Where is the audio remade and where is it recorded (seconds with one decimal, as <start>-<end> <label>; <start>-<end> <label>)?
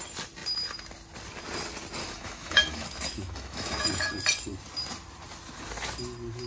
0.0-2.0 recorded; 2.0-4.1 remade; 4.1-6.5 recorded